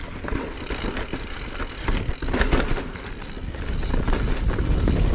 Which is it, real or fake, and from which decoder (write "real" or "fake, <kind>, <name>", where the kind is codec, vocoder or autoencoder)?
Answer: real